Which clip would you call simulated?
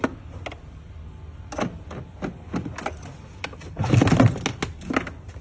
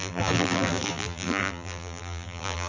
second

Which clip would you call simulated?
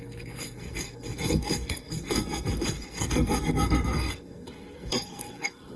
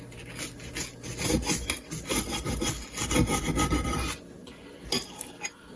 first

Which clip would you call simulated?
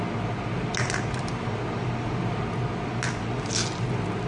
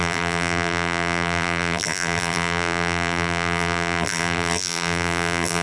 second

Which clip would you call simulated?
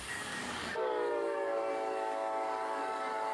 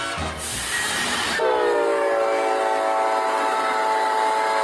first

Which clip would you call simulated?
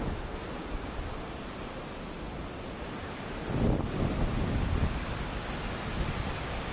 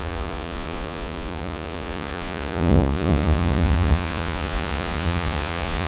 second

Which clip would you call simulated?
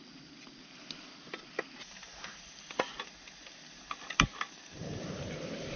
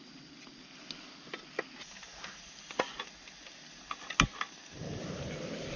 first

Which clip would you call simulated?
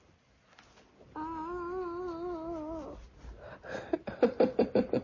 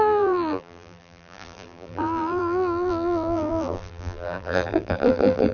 second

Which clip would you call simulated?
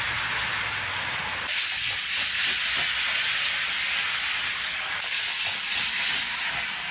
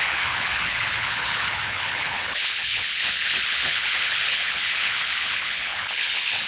second